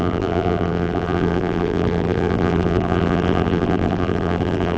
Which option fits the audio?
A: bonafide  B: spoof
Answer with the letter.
B